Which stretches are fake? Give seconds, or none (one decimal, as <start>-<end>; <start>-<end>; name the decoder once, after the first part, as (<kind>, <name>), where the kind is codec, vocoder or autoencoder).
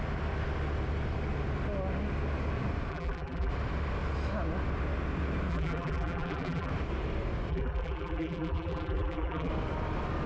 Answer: 2.9-3.5 (vocoder, BigVGAN v2); 5.5-6.7; 7.5-9.5